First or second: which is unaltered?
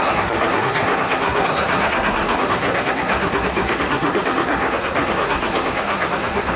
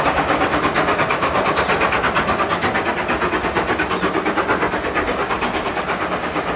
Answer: second